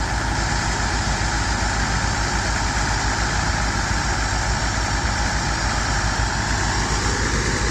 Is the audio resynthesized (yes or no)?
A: no